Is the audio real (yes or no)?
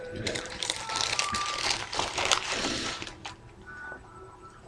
no